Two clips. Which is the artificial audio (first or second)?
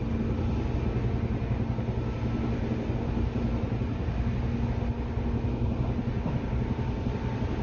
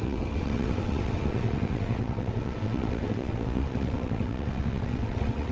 second